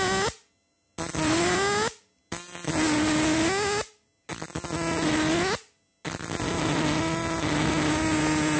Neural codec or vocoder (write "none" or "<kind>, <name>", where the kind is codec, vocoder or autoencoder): none